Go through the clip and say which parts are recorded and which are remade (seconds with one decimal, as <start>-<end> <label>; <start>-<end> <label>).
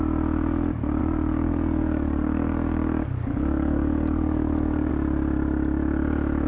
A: 0.0-1.0 recorded; 1.0-4.9 remade; 4.9-6.5 recorded